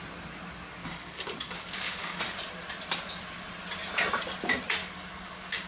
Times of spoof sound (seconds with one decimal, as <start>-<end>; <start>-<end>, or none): 0.8-2.2; 4.8-5.7